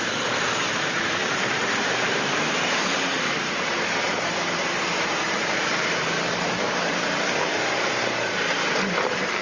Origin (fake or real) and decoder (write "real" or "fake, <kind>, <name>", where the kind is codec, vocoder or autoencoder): fake, vocoder, BigVGAN v2